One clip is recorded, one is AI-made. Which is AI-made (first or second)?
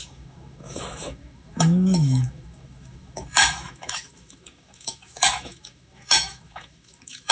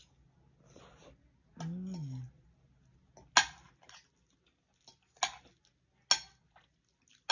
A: first